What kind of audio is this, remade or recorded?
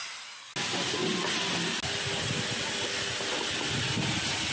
recorded